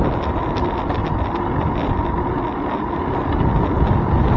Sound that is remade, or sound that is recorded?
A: recorded